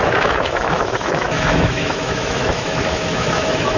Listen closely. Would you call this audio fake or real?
fake